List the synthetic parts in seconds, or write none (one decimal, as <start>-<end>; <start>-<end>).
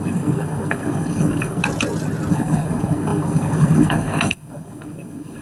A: 0.0-1.6; 2.3-5.4